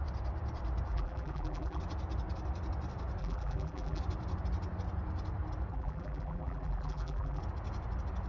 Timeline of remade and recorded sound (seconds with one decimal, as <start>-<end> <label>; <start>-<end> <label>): 0.0-0.9 recorded; 0.9-1.8 remade; 1.8-3.2 recorded; 3.2-4.0 remade; 4.0-5.7 recorded; 5.7-7.4 remade; 7.4-8.3 recorded